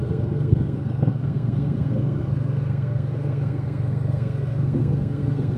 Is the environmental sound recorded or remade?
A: remade